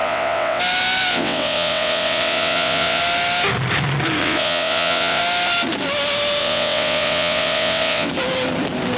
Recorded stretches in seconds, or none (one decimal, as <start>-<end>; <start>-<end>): 0.6-1.1; 3.0-4.2; 5.2-6.4; 8.1-9.0